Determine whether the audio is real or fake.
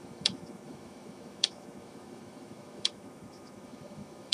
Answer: fake